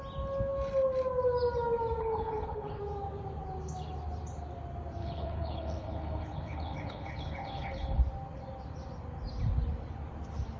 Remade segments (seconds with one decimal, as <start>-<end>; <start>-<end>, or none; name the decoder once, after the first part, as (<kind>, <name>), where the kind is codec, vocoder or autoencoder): 2.0-2.8 (codec, HILCodec); 5.0-8.0

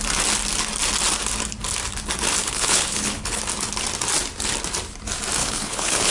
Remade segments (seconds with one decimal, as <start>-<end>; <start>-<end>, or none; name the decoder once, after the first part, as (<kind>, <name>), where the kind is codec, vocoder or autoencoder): 2.4-3.4 (codec, HILCodec); 5.4-6.1

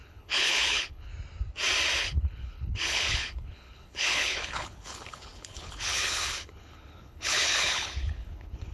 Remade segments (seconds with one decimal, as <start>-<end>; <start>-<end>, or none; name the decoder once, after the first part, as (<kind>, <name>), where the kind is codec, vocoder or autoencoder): 0.0-1.1 (codec, HILCodec); 2.0-8.7

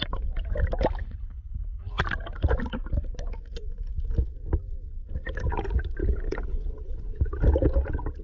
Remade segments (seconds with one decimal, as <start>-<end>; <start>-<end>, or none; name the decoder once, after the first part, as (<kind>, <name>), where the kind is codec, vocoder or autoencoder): 1.0-2.0 (codec, HILCodec); 6.0-7.2

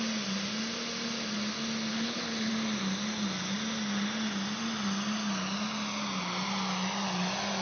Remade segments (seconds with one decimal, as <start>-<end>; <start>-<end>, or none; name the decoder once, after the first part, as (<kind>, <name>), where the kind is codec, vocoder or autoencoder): 1.9-2.5 (codec, HILCodec)

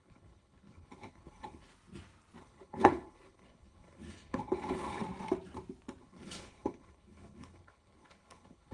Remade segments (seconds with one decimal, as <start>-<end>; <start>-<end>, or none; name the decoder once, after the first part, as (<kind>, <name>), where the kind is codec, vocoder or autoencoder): 0.0-1.7 (codec, HILCodec); 2.4-5.0; 6.0-8.7

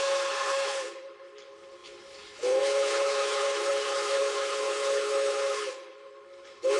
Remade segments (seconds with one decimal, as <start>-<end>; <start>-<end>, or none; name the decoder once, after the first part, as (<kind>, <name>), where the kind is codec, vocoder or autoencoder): 0.0-6.8 (codec, HILCodec)

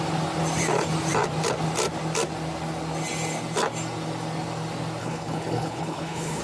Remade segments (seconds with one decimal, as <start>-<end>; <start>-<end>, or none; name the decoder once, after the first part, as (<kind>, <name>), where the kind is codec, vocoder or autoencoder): 5.0-6.4 (codec, HILCodec)